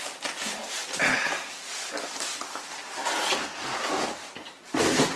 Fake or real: real